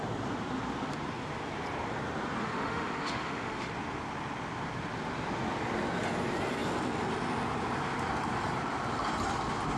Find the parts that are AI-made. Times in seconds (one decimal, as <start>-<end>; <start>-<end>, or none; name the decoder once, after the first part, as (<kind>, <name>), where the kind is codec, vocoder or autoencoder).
2.4-3.7 (autoencoder, DAC-VAE)